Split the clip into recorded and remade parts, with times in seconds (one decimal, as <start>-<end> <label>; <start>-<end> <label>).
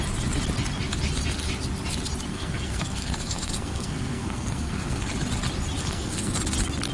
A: 0.0-2.3 recorded; 2.3-5.1 remade; 5.1-5.8 recorded; 5.8-6.4 remade; 6.4-6.9 recorded